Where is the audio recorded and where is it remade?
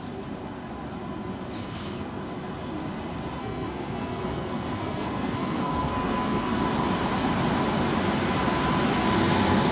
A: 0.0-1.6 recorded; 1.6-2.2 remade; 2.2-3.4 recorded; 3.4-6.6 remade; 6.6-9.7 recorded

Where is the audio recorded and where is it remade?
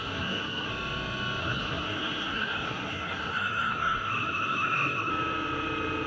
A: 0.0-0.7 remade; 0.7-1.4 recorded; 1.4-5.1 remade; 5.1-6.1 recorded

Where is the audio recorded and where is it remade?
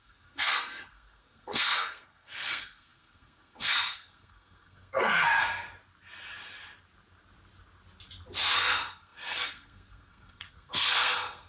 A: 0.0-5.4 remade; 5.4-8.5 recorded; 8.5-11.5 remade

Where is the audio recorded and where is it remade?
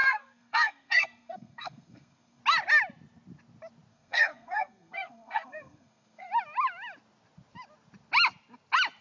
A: 0.0-2.4 remade; 2.4-3.9 recorded; 3.9-6.3 remade; 6.3-9.0 recorded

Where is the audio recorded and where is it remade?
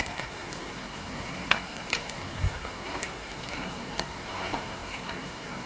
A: 0.0-5.7 remade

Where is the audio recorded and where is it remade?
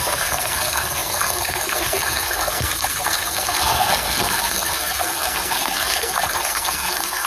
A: 0.0-7.3 remade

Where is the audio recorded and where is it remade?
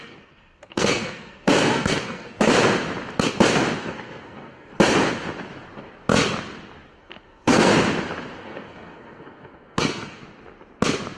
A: 0.0-2.5 remade; 2.5-3.8 recorded; 3.8-4.7 remade; 4.7-6.9 recorded; 6.9-7.7 remade; 7.7-8.4 recorded; 8.4-10.2 remade; 10.2-11.2 recorded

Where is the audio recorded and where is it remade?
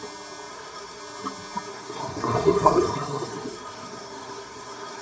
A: 0.0-0.5 recorded; 0.5-1.0 remade; 1.0-1.7 recorded; 1.7-5.0 remade